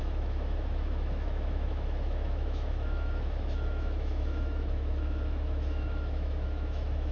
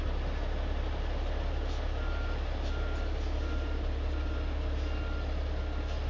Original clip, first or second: second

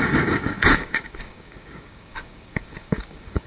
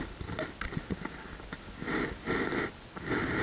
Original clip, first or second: second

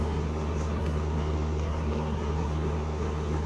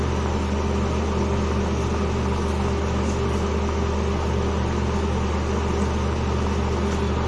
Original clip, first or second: second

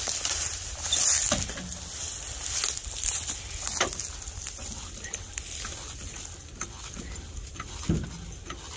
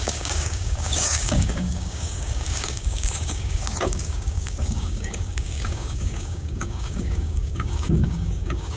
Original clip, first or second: first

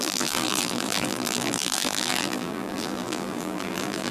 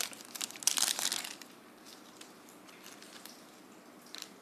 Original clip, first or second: second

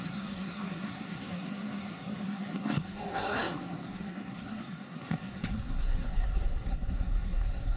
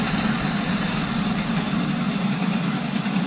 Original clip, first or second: second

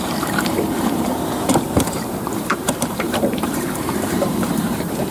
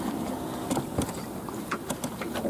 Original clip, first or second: second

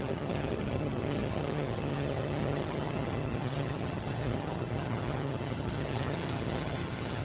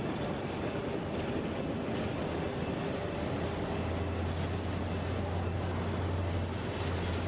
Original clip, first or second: second